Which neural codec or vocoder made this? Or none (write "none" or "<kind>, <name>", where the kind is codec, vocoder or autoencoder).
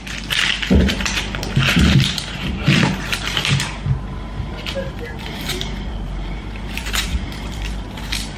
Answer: vocoder, BigVGAN v2